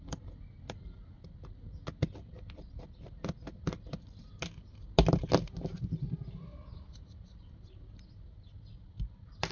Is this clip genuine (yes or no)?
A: yes